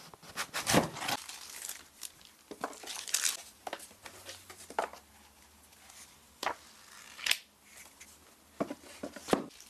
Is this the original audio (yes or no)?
yes